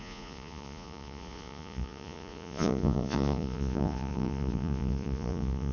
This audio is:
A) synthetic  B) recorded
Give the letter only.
A